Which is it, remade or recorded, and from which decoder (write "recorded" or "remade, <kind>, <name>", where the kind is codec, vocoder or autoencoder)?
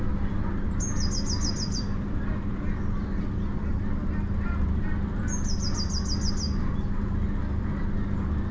recorded